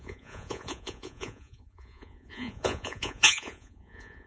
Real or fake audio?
fake